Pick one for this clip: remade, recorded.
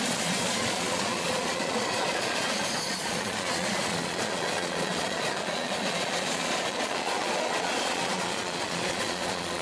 remade